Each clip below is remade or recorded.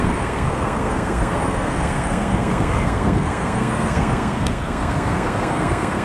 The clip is remade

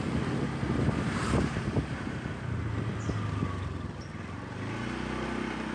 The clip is recorded